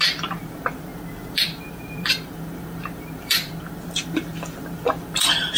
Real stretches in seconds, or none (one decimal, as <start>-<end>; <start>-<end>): none